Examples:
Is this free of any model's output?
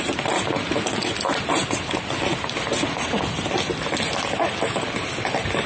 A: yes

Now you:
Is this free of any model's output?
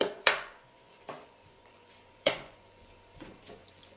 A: no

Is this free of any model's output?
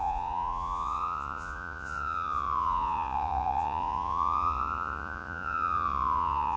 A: no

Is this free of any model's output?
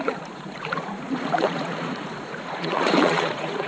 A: no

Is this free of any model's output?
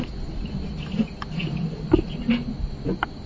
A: yes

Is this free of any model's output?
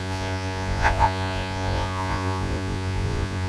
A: no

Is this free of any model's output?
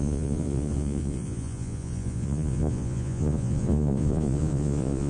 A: no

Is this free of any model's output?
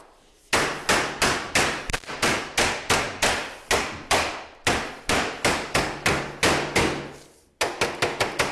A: yes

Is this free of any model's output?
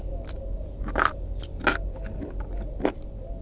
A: yes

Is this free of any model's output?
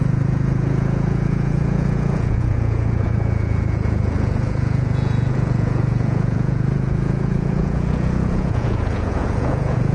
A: no